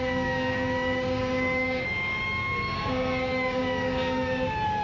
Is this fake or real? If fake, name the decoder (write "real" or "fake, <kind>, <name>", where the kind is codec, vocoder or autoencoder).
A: fake, codec, DAC